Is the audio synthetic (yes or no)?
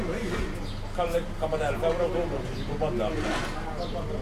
no